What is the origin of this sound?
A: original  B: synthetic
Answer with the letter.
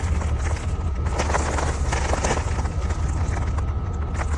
A